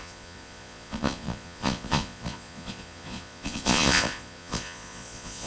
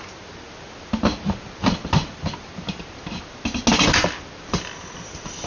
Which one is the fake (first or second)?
first